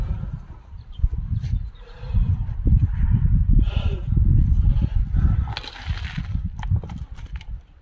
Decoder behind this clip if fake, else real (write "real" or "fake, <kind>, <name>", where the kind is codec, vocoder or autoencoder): real